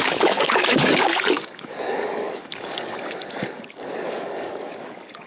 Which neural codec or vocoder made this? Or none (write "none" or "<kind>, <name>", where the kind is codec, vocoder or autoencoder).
codec, DAC